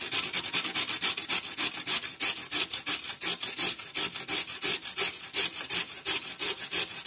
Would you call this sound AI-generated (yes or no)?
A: no